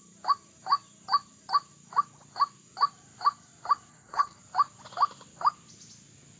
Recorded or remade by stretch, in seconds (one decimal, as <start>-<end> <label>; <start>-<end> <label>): 0.0-3.9 recorded; 3.9-4.4 remade; 4.4-6.4 recorded